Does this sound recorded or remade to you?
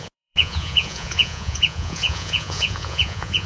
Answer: remade